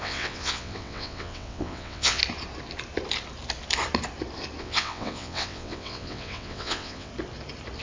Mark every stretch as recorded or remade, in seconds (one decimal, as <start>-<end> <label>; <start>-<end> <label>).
0.0-2.2 remade; 2.2-4.6 recorded; 4.6-7.1 remade; 7.1-7.8 recorded